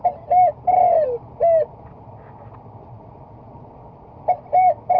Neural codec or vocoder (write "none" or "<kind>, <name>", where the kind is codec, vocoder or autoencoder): none